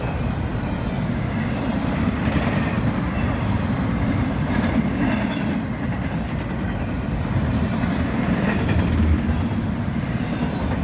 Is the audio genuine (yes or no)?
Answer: no